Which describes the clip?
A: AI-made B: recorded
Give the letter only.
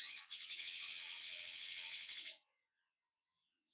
A